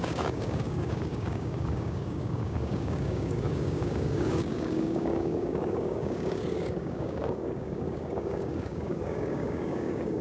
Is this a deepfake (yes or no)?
yes